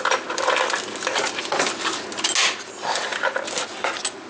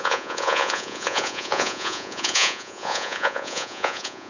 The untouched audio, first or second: first